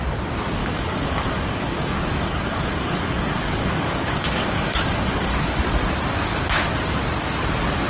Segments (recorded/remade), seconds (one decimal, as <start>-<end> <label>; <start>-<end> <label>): 0.0-0.6 recorded; 0.6-5.3 remade; 5.3-7.9 recorded

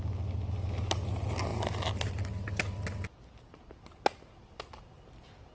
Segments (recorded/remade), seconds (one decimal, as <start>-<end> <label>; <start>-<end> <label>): 0.0-5.5 recorded

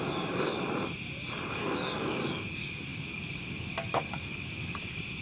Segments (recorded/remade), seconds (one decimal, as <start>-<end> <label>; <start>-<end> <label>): 0.0-0.5 remade; 0.5-1.5 recorded; 1.5-5.2 remade

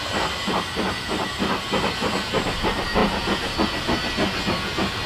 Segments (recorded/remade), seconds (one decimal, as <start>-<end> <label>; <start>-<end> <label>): 0.0-5.1 recorded

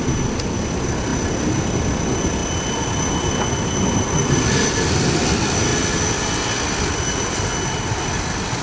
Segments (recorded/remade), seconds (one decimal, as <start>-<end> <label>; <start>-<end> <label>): 0.0-8.6 recorded